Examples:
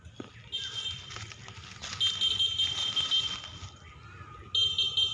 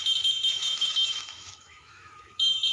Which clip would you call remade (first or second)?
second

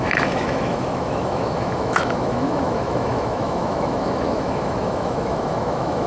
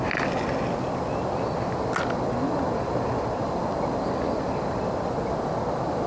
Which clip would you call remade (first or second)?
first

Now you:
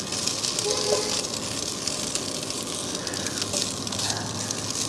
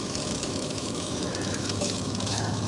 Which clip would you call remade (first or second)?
second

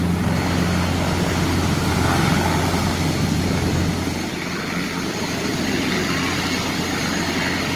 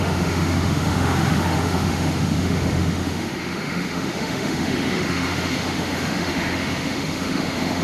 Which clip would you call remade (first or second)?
second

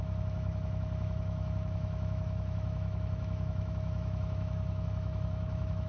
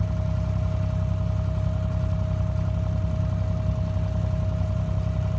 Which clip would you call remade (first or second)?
first